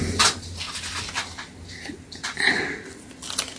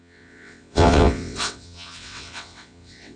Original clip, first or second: first